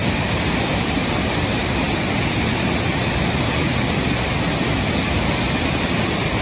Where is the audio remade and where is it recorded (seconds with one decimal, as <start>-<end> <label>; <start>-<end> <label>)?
0.0-6.4 recorded